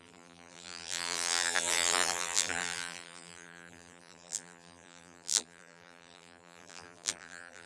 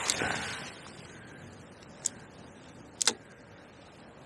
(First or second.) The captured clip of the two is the second